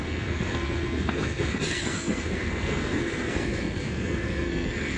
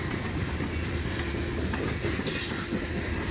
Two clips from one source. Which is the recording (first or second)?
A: second